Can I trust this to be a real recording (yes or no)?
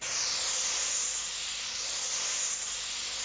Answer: yes